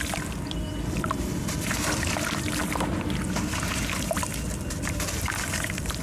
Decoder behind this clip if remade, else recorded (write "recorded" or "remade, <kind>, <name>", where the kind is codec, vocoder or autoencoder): recorded